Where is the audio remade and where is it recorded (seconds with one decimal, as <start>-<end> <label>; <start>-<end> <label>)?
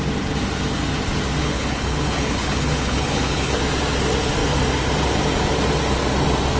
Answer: 0.0-1.4 recorded; 1.4-3.6 remade; 3.6-6.6 recorded